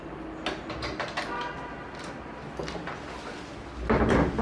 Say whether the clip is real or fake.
real